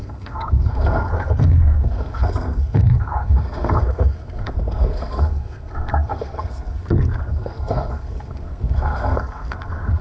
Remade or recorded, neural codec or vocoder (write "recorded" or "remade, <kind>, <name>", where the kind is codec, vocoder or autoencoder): remade, codec, SNAC